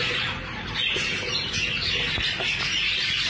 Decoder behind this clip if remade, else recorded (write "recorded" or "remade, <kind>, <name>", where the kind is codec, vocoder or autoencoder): recorded